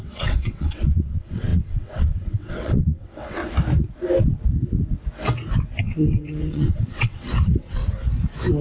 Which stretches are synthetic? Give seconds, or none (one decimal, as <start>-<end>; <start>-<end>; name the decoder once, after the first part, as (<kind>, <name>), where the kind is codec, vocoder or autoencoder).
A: 0.0-3.4 (vocoder, WaveNeXt); 5.8-7.8